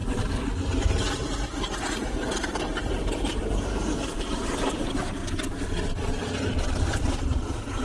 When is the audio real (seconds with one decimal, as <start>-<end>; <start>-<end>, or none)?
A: 2.8-4.6